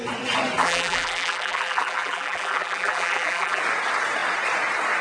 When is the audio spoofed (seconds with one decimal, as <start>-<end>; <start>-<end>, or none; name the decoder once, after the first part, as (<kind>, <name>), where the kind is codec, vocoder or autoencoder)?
0.6-3.6 (vocoder, BigVGAN v2)